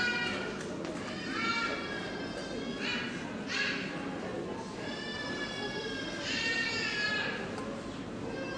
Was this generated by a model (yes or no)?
no